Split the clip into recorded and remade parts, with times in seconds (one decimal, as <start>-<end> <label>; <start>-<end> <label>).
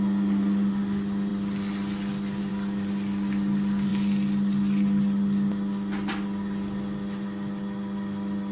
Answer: 0.0-8.5 recorded